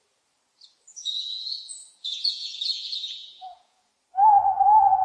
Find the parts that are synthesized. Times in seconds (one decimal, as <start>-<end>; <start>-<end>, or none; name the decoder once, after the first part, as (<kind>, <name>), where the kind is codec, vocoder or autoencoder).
0.9-3.9 (vocoder, Vocos)